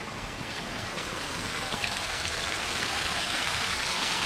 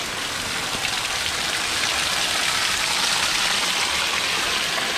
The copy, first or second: first